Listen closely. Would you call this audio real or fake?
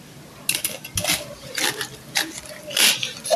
real